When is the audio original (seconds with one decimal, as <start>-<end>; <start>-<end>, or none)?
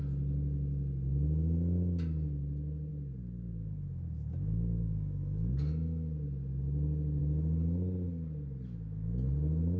0.0-9.8